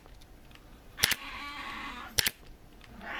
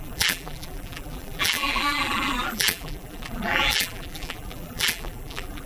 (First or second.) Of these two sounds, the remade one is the second